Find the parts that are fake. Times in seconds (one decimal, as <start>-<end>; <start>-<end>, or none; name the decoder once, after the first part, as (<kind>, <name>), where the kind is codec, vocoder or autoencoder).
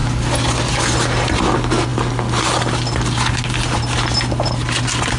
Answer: none